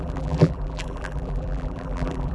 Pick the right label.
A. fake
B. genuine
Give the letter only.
A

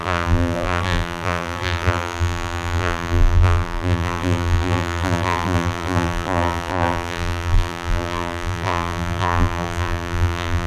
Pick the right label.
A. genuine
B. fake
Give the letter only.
B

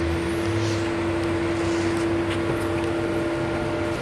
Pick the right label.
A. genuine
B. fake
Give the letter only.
A